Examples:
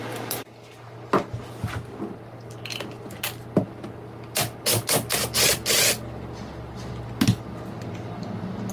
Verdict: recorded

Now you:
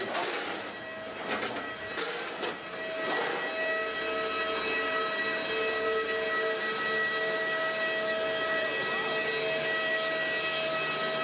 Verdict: recorded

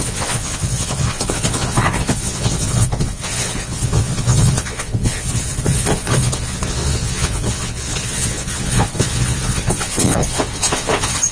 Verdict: remade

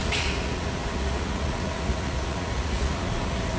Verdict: remade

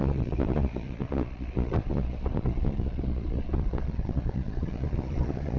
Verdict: remade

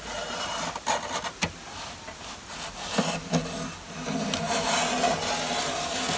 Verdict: recorded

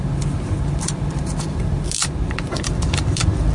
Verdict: recorded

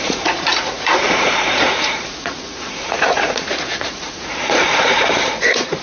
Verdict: remade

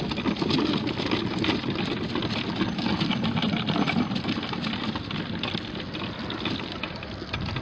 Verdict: recorded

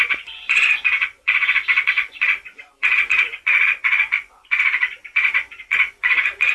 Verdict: remade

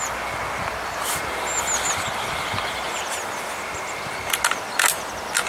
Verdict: recorded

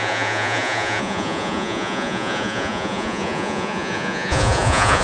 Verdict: remade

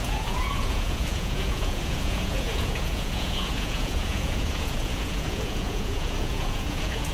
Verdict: remade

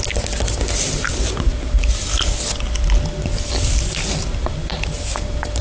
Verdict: recorded